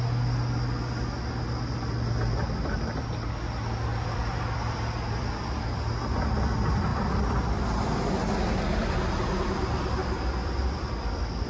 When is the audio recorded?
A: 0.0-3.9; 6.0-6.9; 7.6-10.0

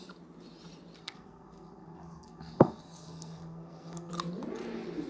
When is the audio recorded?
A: 0.0-1.0; 4.1-5.1

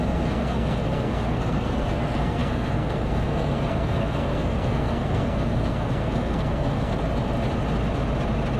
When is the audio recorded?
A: 6.9-8.6

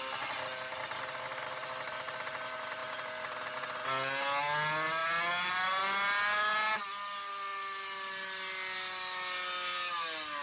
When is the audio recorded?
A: 0.0-10.4

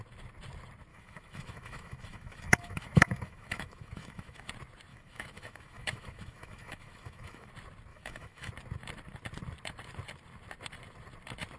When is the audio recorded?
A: 0.0-0.9; 4.5-4.9; 7.5-7.9; 8.5-11.6

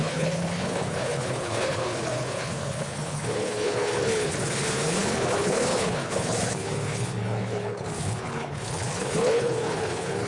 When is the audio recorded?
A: none